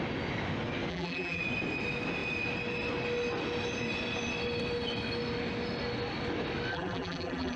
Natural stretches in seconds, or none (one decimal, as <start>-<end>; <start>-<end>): 0.0-0.9; 1.4-6.7